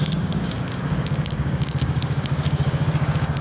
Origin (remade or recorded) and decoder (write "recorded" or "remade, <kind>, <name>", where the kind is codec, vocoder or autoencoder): remade, codec, DAC